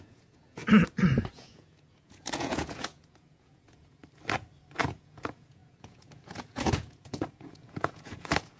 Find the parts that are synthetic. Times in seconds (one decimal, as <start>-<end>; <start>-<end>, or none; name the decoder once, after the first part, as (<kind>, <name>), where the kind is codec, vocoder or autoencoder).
0.0-0.6 (vocoder, Vocos); 1.3-4.0; 4.8-8.6